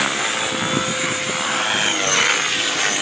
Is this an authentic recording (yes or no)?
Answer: yes